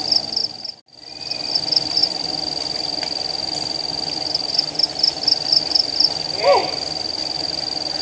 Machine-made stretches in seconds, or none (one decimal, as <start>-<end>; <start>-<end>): none